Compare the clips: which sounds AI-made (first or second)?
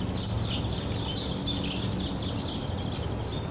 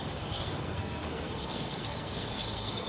second